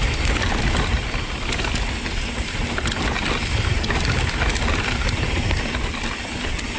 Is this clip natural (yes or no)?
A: yes